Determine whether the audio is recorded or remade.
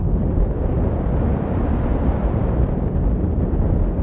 remade